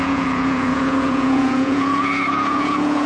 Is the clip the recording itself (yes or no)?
no